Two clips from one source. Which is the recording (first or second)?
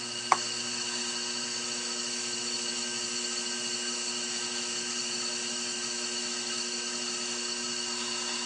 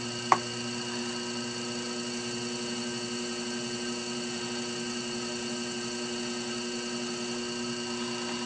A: second